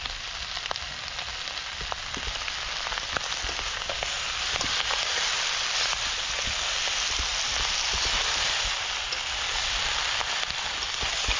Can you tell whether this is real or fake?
real